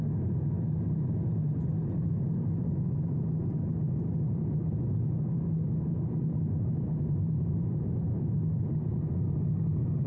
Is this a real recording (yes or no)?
yes